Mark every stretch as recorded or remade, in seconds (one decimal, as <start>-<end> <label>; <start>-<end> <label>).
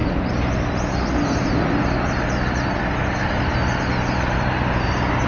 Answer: 0.0-5.3 recorded